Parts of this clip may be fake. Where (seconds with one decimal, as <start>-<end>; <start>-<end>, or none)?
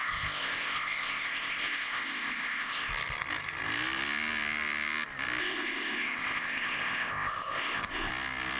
0.0-2.9; 5.4-8.1